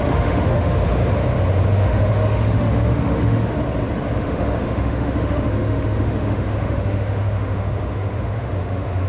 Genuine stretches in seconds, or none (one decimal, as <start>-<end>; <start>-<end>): 1.2-1.7; 3.6-4.2